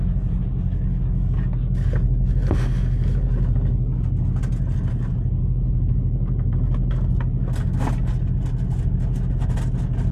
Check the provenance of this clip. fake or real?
real